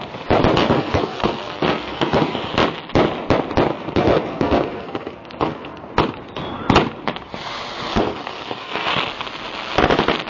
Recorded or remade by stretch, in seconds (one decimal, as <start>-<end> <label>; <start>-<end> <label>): 0.0-0.6 recorded; 0.6-2.5 remade; 2.5-3.7 recorded; 3.7-5.9 remade; 5.9-7.9 recorded; 7.9-8.9 remade; 8.9-10.3 recorded